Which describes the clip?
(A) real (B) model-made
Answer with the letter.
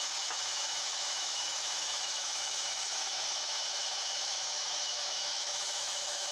B